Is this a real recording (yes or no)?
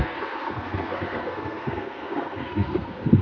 no